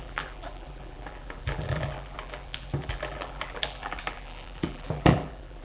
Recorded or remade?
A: remade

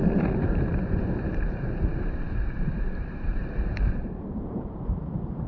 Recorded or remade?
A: remade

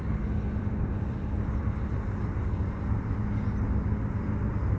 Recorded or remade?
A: remade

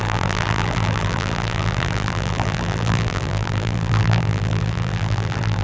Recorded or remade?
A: remade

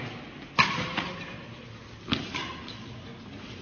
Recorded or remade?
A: recorded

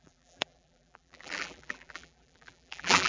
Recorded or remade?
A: remade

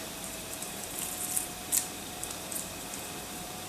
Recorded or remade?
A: remade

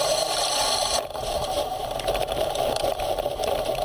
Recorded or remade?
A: remade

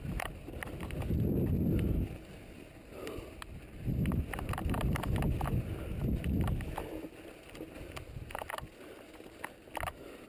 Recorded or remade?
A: recorded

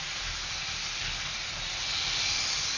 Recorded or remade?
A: recorded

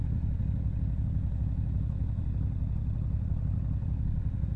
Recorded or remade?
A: recorded